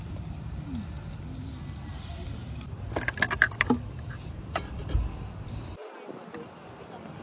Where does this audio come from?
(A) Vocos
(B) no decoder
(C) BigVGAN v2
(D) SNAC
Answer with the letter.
B